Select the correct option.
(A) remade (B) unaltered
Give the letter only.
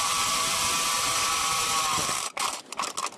B